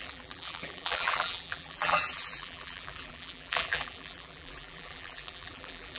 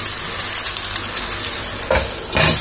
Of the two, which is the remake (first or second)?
first